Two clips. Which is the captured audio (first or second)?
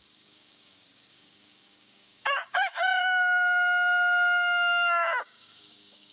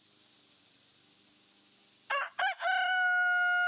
second